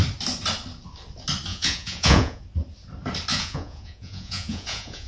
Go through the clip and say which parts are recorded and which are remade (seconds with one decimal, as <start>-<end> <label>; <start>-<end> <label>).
0.0-1.5 recorded; 1.5-2.4 remade; 2.4-3.3 recorded; 3.3-5.1 remade